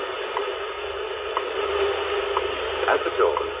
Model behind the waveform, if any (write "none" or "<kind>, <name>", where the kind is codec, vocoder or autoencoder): none